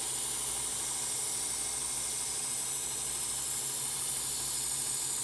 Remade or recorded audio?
recorded